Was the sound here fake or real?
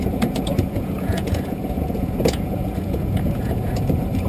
fake